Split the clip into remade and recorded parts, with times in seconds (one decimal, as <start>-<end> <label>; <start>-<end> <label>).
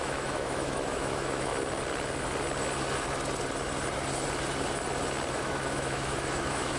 0.0-1.5 remade; 1.5-5.3 recorded; 5.3-6.8 remade